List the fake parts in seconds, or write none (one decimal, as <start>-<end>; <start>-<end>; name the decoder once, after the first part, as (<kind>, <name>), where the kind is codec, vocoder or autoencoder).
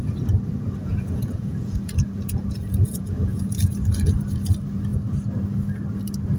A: 0.8-3.7 (vocoder, Vocos)